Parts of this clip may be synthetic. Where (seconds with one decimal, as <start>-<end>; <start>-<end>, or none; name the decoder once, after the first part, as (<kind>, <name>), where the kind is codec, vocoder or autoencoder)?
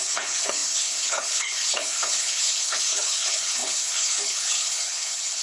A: 0.0-5.4 (codec, HILCodec)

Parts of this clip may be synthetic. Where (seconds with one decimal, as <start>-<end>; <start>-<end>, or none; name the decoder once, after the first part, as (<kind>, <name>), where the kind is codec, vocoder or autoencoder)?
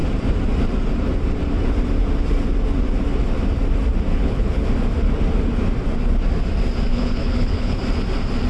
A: 4.1-4.6 (codec, HILCodec); 6.9-7.8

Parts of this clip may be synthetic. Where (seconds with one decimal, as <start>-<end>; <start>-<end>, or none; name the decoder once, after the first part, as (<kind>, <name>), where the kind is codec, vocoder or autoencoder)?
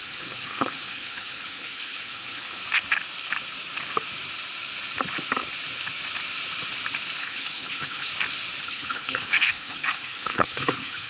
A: 0.0-2.6 (codec, HILCodec); 7.2-8.1; 8.6-11.1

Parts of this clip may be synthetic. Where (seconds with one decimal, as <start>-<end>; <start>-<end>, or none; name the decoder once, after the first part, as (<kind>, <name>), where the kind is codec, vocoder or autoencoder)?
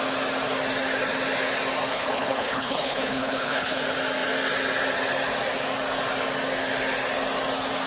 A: 1.9-3.8 (codec, HILCodec)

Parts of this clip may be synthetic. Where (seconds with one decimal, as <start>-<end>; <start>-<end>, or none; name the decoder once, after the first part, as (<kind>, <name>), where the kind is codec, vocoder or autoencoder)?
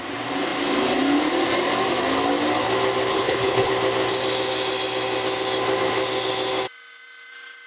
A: 3.1-3.7 (codec, HILCodec)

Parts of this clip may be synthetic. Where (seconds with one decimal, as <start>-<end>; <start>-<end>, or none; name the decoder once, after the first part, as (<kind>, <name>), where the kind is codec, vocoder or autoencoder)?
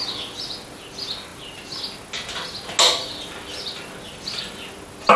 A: none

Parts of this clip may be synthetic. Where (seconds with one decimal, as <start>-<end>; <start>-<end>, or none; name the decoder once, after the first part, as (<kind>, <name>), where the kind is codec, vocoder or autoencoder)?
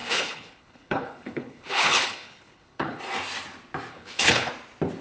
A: 0.0-3.0 (codec, HILCodec); 3.9-4.5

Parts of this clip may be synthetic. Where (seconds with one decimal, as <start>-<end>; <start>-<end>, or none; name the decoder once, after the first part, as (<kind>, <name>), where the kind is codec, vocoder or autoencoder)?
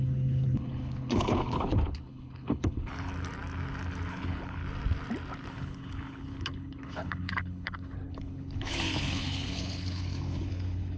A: 0.0-3.1 (codec, HILCodec); 4.1-4.6; 5.5-11.0